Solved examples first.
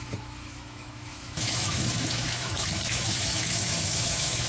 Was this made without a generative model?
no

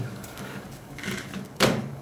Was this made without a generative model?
no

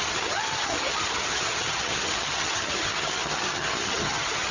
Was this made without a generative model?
no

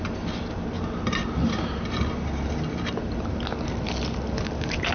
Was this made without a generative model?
yes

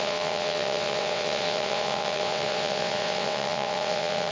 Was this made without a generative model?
no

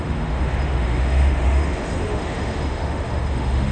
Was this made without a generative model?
no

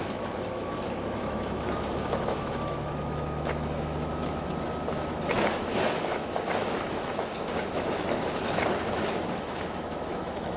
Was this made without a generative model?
no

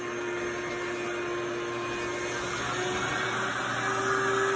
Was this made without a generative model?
yes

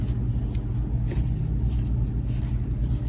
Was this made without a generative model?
yes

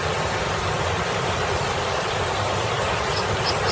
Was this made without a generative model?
yes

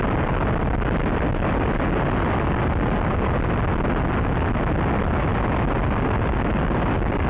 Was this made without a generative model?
yes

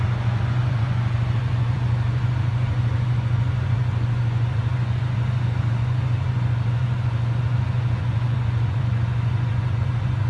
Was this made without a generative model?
no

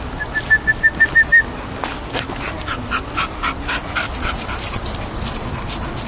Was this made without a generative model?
yes